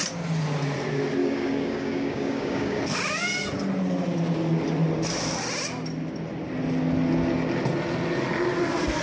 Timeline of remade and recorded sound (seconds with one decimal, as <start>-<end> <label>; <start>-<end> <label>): 0.0-1.2 recorded; 1.2-2.8 remade; 2.8-9.0 recorded